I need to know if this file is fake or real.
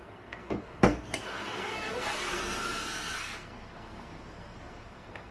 fake